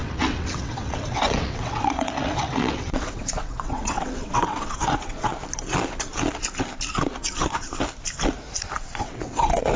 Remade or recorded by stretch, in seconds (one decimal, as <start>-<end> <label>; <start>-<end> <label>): 0.0-5.3 remade; 5.3-8.8 recorded; 8.8-9.8 remade